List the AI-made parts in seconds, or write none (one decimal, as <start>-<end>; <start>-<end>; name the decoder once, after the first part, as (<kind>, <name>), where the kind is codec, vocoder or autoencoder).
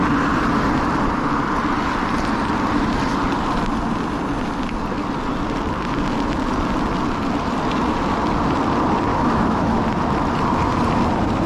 9.1-9.8 (autoencoder, DAC-VAE)